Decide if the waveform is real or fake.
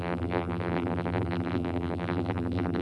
fake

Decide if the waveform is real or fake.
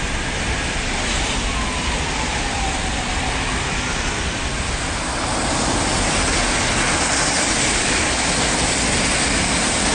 real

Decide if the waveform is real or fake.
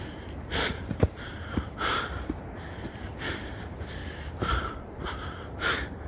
fake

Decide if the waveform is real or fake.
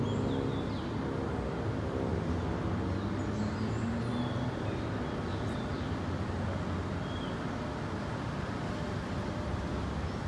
real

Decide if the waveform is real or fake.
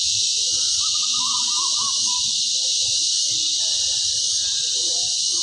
fake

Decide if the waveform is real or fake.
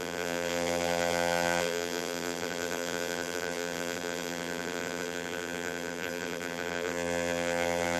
fake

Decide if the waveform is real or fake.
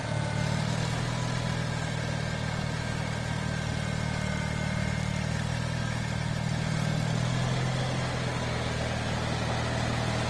real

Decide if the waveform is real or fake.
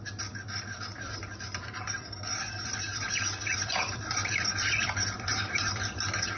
fake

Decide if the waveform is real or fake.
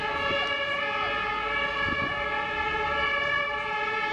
real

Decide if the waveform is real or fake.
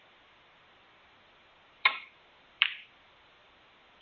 fake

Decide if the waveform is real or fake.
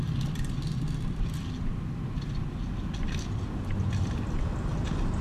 real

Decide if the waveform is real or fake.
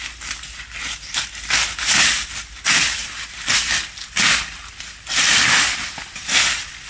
real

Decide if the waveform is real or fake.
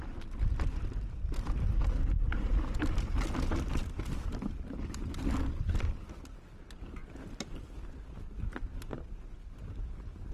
real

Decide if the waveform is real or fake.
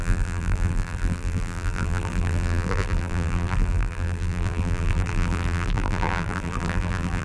fake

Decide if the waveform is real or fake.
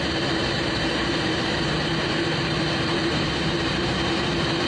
fake